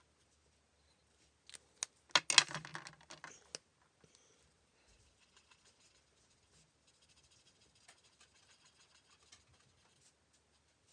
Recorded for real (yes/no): yes